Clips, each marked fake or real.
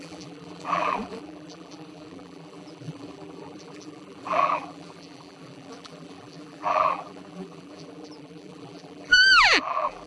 fake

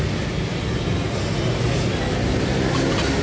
real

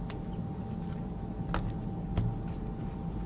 real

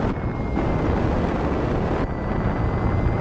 real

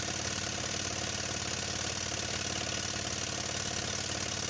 real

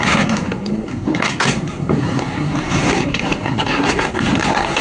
fake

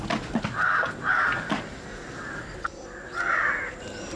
real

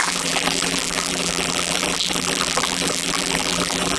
fake